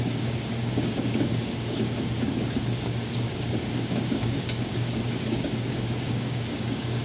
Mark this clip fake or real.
fake